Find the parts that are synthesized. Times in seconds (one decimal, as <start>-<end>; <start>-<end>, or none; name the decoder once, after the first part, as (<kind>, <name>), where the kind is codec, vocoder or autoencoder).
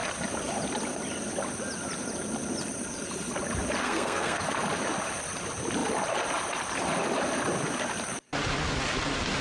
3.8-4.4 (codec, SNAC)